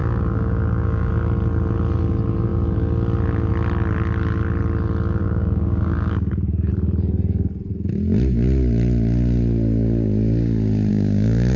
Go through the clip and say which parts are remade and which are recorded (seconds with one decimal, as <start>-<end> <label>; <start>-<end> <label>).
0.0-1.1 remade; 1.1-5.2 recorded; 5.2-6.7 remade; 6.7-10.9 recorded; 10.9-11.6 remade